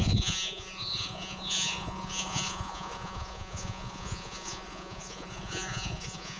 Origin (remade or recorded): remade